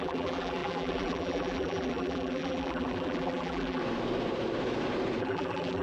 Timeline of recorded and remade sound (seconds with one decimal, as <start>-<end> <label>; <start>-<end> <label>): 0.0-3.8 remade; 3.8-5.2 recorded; 5.2-5.8 remade